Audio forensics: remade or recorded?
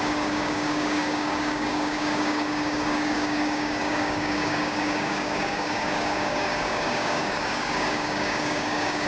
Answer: remade